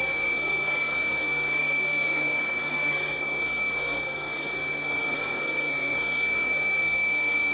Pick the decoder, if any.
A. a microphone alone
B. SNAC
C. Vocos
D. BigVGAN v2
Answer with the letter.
B